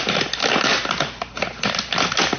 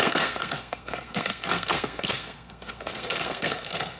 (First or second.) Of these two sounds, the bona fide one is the first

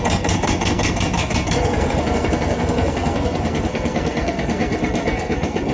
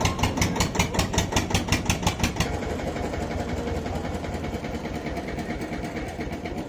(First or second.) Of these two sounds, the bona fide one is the second